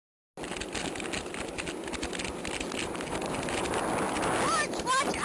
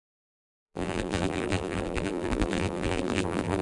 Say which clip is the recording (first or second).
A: first